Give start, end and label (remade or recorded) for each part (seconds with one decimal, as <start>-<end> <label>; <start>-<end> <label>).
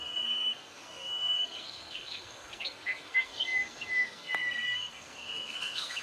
0.0-6.0 remade